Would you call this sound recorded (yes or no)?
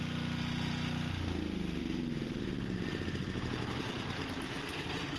yes